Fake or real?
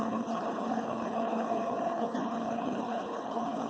fake